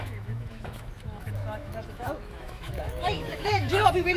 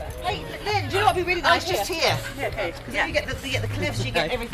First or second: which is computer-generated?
first